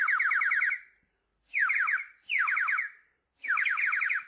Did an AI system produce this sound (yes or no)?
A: no